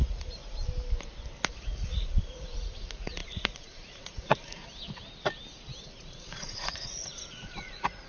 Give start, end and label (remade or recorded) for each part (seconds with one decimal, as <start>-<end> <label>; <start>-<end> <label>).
0.0-0.4 remade; 0.4-1.5 recorded; 1.5-4.6 remade; 4.6-5.8 recorded; 5.8-8.1 remade